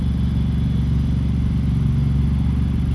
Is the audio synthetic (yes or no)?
no